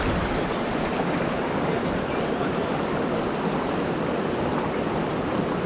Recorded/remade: recorded